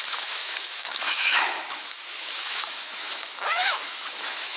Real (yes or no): no